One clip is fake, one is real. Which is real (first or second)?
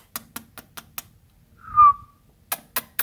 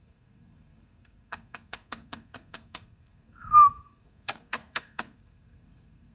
first